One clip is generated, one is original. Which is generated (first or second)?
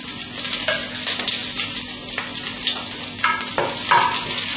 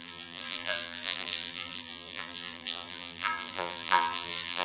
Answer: second